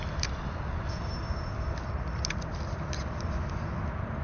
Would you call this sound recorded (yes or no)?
yes